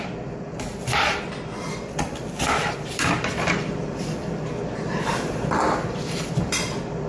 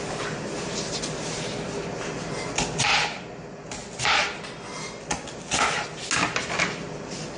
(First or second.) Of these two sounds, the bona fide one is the second